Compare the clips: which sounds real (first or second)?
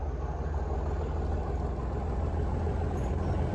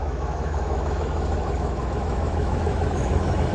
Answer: first